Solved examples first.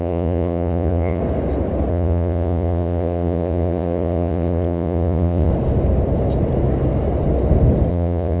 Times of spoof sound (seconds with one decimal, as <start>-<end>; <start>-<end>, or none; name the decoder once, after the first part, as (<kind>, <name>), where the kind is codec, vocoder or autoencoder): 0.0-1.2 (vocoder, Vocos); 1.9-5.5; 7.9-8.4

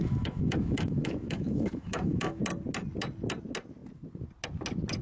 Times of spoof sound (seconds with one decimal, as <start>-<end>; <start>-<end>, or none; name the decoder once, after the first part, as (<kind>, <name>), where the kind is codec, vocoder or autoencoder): 0.0-2.4 (autoencoder, DAC-VAE)

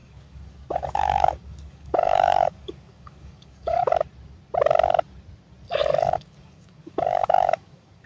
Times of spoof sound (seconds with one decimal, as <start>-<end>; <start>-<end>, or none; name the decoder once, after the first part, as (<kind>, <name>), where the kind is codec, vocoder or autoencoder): 0.0-3.9 (codec, DAC); 5.8-8.1

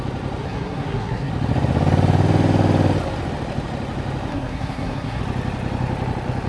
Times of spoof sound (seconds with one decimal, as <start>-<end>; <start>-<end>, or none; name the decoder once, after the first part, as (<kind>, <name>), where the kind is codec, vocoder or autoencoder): 0.4-1.3 (codec, SNAC); 4.3-5.2

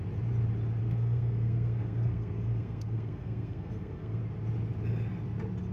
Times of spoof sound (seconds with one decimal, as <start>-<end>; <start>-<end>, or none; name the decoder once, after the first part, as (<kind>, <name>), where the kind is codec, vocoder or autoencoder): 0.8-4.2 (codec, SNAC)

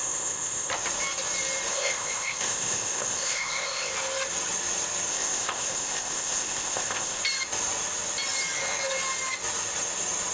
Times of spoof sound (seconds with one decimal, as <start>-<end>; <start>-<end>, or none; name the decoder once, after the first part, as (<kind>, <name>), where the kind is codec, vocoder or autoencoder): 0.0-0.7 (codec, ZipCodec); 1.7-3.9; 5.1-7.2

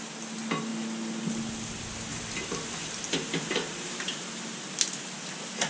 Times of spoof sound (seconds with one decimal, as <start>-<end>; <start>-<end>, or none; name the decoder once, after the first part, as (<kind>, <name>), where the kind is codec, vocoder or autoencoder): 2.1-4.0 (vocoder, BigVGAN v2)

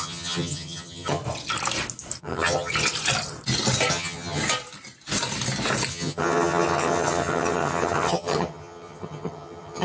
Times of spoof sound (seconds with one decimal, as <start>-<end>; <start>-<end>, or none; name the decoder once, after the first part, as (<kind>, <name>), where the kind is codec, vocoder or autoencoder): 0.0-1.2 (vocoder, HiFi-GAN); 2.2-2.7; 3.9-4.4; 5.9-9.8